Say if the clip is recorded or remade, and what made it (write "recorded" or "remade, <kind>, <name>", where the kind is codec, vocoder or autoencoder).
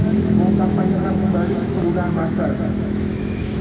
remade, autoencoder, DAC-VAE